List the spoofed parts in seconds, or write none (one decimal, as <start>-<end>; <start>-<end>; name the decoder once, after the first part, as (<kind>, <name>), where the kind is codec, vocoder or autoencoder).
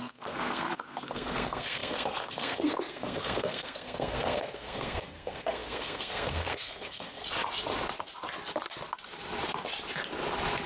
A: 0.0-7.2 (codec, SNAC)